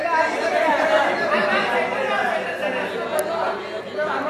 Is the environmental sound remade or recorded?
recorded